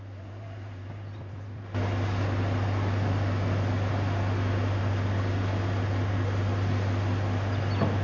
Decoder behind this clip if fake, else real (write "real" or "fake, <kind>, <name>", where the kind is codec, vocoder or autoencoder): real